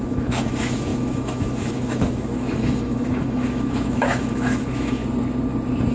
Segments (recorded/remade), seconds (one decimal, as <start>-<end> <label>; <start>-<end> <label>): 0.0-5.0 remade; 5.0-5.9 recorded